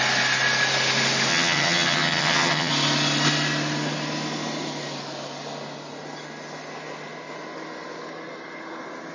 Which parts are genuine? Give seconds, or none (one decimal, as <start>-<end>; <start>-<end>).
0.0-1.3; 2.7-9.1